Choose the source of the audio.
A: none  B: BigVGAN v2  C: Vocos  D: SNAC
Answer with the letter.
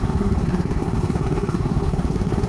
D